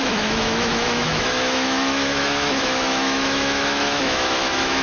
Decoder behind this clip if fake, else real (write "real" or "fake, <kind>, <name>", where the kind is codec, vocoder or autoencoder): fake, autoencoder, DAC-VAE